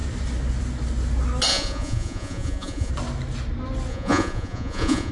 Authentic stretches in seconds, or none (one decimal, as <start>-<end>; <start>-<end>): 0.0-1.5; 2.9-3.9